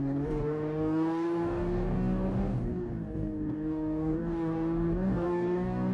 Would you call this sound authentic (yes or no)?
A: no